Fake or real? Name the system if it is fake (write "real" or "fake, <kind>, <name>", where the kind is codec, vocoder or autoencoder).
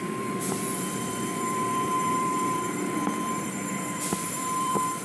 fake, vocoder, BigVGAN v2